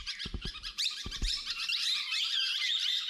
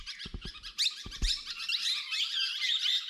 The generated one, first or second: first